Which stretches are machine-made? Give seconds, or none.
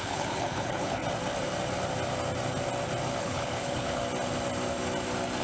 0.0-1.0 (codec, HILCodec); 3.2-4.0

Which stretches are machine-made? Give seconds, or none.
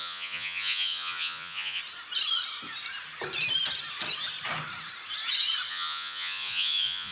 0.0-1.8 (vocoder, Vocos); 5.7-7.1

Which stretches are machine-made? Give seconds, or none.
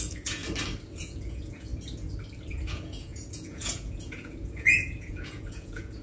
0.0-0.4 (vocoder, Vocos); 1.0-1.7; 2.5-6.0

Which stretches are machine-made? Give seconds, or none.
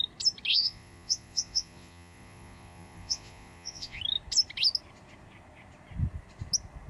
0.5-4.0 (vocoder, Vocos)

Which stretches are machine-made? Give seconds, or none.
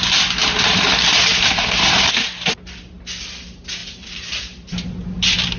0.4-2.3 (vocoder, BigVGAN v2); 3.8-5.6